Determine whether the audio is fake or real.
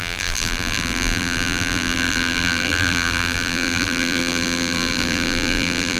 fake